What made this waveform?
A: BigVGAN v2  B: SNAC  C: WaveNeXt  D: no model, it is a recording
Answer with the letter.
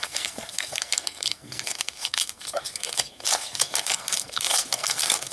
B